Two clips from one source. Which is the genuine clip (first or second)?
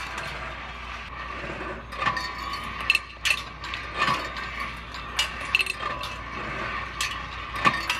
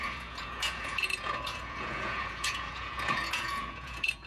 first